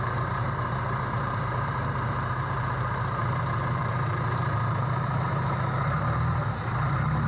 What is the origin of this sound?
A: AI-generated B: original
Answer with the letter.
A